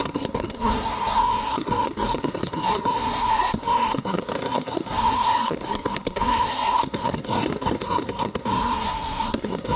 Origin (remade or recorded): remade